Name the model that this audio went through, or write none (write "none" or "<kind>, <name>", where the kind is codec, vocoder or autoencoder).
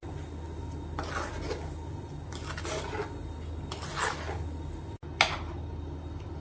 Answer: none